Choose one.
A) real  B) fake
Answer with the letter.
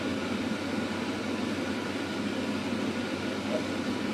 A